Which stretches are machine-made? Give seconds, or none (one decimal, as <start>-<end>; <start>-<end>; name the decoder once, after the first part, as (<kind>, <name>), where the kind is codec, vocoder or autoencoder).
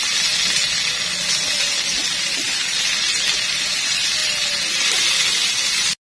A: none